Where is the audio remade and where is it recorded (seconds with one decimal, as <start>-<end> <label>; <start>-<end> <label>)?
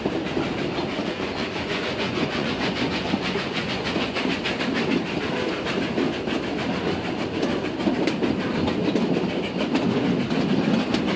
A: 0.0-0.9 recorded; 0.9-4.4 remade; 4.4-11.2 recorded